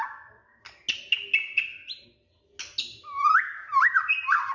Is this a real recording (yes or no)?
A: yes